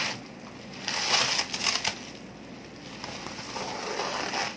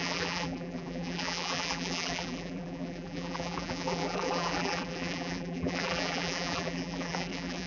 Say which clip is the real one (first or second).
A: first